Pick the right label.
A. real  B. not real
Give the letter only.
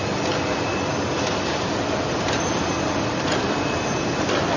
A